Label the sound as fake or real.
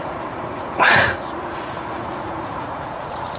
fake